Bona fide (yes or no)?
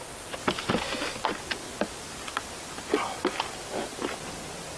yes